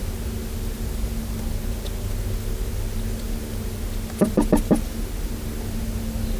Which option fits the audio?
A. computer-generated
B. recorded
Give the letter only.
B